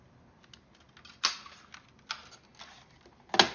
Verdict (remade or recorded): recorded